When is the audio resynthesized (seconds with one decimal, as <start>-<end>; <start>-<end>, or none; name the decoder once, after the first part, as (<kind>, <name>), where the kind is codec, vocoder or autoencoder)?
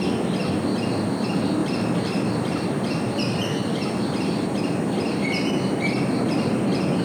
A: 1.6-4.0 (vocoder, BigVGAN v2)